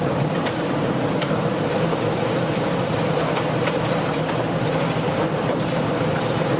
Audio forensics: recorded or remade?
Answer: remade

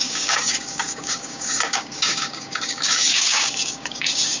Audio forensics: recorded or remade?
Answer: remade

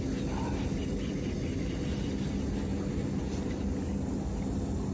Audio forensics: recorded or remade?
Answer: recorded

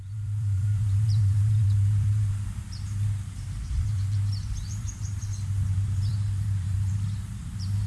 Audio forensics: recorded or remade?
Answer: remade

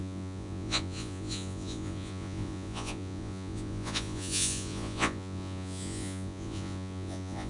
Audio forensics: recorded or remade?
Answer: remade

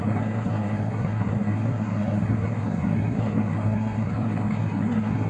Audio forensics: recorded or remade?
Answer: remade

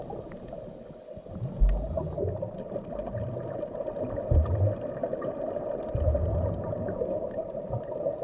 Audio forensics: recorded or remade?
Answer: recorded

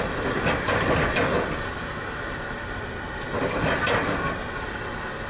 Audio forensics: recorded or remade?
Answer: recorded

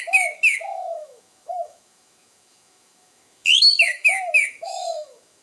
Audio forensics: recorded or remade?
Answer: remade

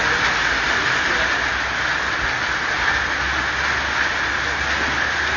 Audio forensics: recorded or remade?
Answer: recorded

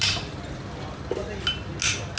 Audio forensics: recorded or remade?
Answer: recorded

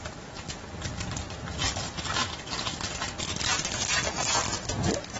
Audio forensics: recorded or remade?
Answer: recorded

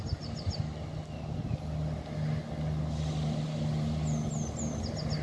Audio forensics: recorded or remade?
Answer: recorded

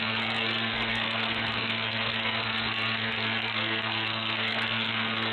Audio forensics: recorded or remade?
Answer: remade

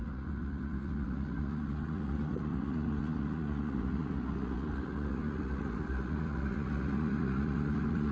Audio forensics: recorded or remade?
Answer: remade